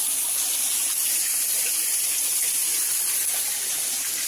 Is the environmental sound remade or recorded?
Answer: recorded